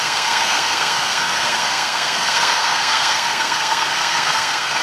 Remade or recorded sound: remade